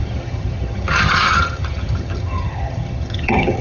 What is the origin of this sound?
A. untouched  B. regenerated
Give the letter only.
B